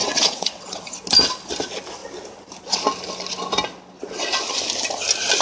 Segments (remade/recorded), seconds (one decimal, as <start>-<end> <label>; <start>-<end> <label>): 0.0-0.9 remade; 0.9-5.4 recorded